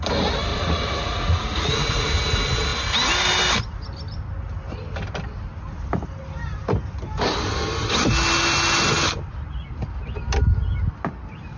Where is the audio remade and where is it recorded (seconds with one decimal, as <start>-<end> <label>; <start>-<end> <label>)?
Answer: 0.0-0.5 recorded; 0.5-2.1 remade; 2.1-11.6 recorded